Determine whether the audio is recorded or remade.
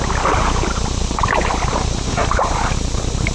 recorded